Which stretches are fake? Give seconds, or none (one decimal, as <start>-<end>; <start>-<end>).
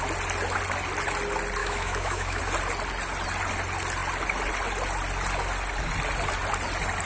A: 1.6-2.4